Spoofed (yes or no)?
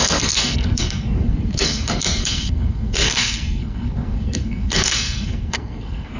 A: yes